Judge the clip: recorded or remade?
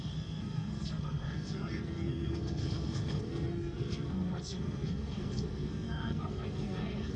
remade